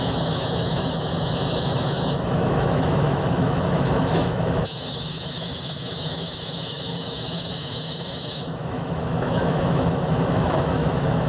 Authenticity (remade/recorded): remade